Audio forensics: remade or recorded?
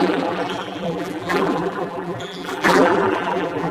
remade